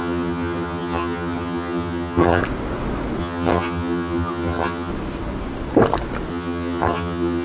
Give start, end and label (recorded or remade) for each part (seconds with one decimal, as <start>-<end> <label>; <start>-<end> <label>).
0.0-2.4 remade; 2.4-3.2 recorded; 3.2-4.9 remade; 4.9-6.3 recorded; 6.3-7.4 remade